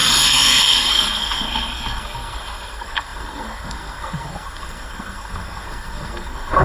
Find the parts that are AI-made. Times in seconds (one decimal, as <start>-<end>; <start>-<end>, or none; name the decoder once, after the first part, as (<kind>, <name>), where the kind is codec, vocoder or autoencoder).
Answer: 0.0-6.6 (codec, SNAC)